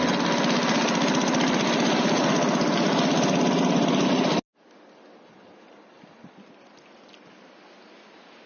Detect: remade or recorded recorded